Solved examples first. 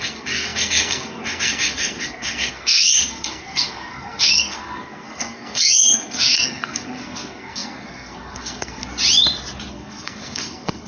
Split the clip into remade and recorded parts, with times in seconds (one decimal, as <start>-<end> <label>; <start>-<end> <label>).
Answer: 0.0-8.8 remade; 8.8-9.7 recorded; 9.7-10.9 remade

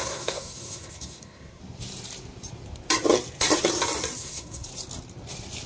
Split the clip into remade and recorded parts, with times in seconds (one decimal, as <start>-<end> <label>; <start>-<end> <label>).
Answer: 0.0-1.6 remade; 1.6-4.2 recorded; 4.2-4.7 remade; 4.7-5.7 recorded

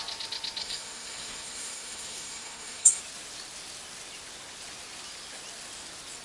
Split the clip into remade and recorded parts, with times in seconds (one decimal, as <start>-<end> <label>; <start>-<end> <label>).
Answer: 0.0-0.6 recorded; 0.6-3.0 remade; 3.0-6.2 recorded

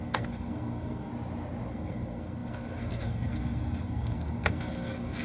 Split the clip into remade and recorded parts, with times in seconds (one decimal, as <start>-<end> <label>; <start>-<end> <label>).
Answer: 0.0-1.1 remade; 1.1-1.7 recorded; 1.7-5.2 remade